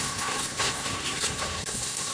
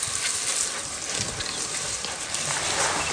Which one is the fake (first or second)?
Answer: first